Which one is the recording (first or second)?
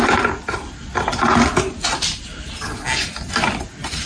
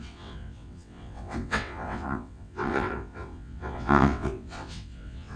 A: first